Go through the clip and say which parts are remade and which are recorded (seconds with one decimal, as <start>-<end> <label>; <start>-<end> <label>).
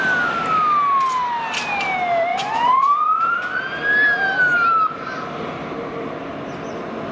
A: 0.0-2.3 recorded; 2.3-3.6 remade; 3.6-7.1 recorded